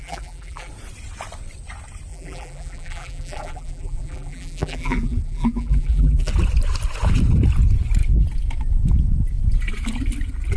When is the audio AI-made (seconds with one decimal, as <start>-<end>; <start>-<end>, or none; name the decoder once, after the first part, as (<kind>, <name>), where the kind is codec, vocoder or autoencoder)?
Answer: 0.0-0.7 (vocoder, BigVGAN v2); 2.1-6.3